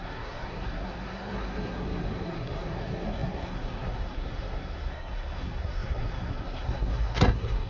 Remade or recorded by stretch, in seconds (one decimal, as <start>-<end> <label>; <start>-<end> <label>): 0.0-7.7 remade